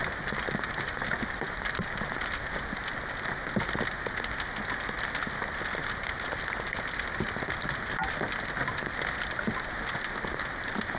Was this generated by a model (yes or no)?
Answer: no